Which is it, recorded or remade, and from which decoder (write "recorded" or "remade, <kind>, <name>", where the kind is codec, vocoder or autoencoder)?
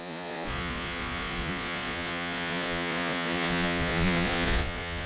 remade, vocoder, Vocos